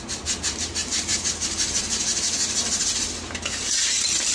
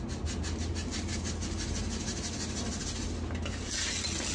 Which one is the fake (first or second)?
first